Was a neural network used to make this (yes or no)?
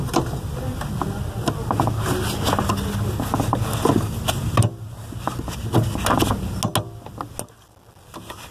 no